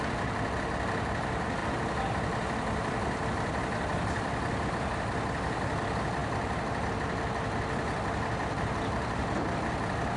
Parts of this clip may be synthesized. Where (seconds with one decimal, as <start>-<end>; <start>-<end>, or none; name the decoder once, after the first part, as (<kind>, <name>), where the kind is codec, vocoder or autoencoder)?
1.6-4.7 (vocoder, BigVGAN v2)